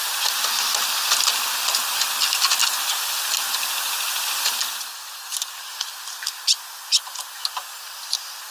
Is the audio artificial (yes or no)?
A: no